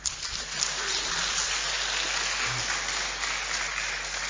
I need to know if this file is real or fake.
real